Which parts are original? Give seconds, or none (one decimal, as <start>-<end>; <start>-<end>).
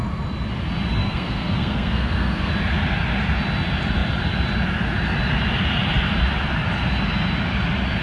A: 0.0-1.0; 2.5-8.0